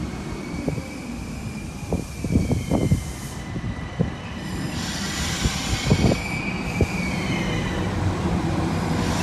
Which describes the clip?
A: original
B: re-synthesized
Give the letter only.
B